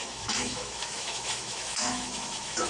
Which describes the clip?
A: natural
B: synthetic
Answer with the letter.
B